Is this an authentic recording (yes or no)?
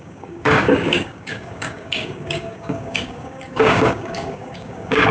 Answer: no